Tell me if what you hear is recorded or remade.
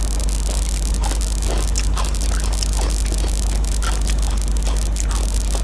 recorded